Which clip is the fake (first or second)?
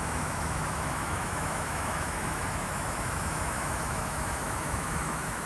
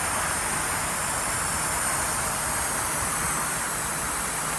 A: first